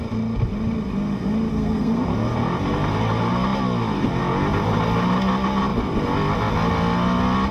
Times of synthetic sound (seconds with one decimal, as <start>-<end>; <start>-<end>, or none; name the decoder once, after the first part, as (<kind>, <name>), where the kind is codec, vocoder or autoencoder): 1.5-2.0 (codec, SNAC)